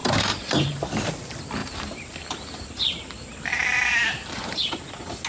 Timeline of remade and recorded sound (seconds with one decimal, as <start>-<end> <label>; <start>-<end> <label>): 0.0-1.1 remade; 1.1-1.6 recorded; 1.6-4.8 remade; 4.8-5.3 recorded